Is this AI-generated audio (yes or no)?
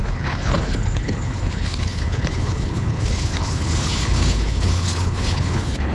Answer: yes